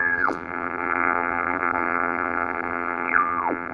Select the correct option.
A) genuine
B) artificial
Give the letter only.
B